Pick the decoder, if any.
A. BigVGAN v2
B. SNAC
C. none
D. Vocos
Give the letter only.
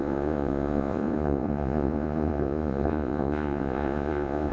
D